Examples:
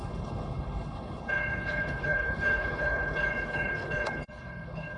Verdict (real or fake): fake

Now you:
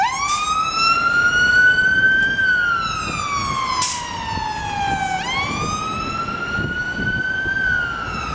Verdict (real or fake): real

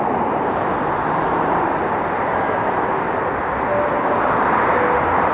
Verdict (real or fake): real